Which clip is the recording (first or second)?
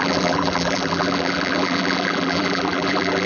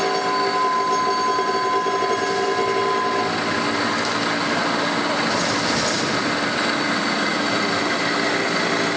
second